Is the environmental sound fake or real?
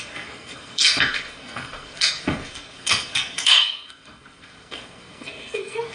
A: fake